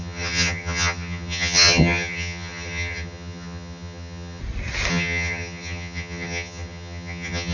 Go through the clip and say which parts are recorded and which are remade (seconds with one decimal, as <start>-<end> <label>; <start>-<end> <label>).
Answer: 0.0-4.4 remade; 4.4-4.9 recorded; 4.9-7.5 remade